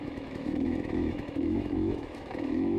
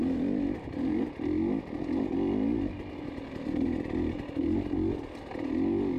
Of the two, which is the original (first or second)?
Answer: second